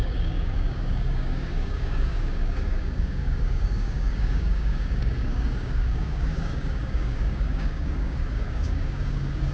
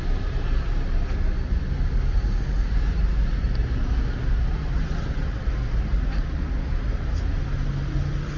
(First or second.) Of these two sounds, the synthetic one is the first